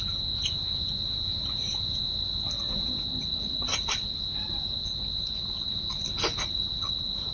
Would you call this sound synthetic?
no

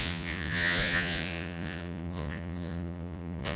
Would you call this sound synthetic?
yes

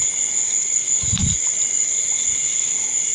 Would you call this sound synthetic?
no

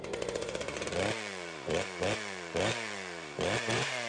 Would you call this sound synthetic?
yes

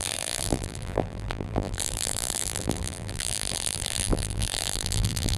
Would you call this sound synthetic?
yes